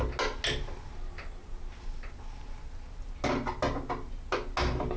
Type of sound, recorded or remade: recorded